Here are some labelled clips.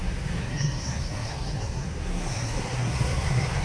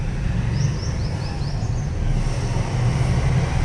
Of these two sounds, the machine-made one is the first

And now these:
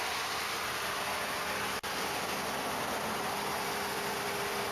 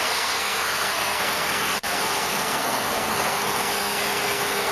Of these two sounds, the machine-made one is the second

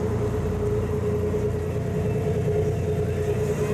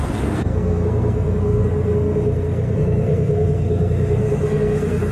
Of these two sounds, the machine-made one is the second